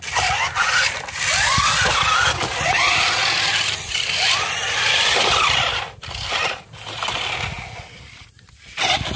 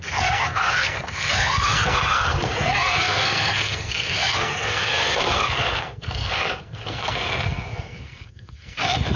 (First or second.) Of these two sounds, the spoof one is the second